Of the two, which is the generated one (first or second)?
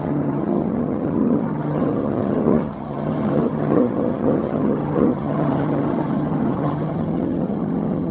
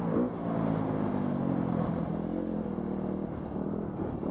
first